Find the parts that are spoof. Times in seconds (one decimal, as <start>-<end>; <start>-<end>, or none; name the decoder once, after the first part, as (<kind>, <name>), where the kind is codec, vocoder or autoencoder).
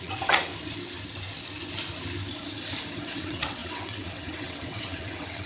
0.0-0.5 (vocoder, WaveNeXt); 3.0-5.5